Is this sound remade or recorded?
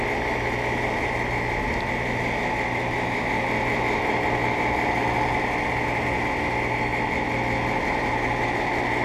recorded